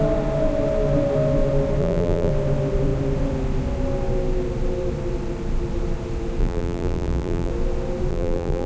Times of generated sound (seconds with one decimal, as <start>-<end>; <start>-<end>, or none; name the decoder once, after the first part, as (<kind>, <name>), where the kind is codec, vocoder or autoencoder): 1.8-2.3 (vocoder, BigVGAN v2); 6.4-7.5; 8.1-8.7